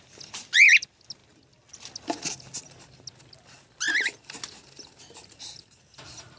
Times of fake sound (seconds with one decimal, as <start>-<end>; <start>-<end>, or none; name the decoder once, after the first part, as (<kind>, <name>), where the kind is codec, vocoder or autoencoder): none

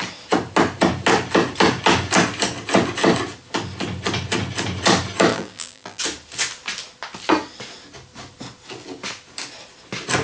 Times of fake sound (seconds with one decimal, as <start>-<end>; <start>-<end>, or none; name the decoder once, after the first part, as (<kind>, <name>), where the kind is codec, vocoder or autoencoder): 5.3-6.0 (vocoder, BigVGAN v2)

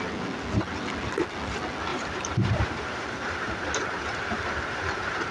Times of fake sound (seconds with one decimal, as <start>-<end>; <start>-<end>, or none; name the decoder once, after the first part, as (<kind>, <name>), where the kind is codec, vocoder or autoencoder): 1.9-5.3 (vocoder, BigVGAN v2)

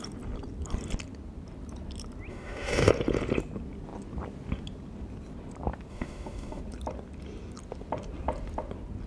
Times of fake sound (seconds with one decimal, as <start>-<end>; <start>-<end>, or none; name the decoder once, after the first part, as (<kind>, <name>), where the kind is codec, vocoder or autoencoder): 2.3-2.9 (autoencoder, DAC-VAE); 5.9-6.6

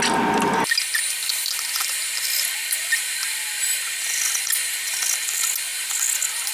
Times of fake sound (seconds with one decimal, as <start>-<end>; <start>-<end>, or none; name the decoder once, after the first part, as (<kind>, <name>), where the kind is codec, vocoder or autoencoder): none

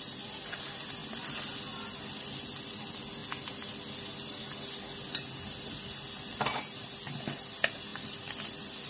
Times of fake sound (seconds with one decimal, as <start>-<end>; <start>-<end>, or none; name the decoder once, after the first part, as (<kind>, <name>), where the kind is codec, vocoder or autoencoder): 7.9-8.9 (vocoder, BigVGAN v2)

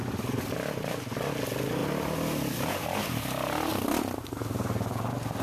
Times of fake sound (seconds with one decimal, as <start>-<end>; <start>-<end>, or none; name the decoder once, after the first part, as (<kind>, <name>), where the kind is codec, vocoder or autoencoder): none